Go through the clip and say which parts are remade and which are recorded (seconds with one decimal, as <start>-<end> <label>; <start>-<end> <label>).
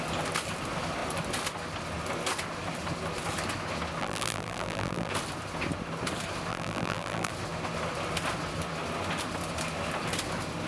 0.0-4.0 recorded; 4.0-5.1 remade; 5.1-6.5 recorded; 6.5-7.3 remade; 7.3-10.7 recorded